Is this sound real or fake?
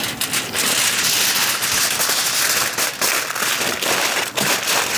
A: real